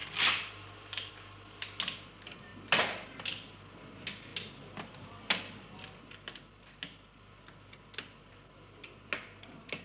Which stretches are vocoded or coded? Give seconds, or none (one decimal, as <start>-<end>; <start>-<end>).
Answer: none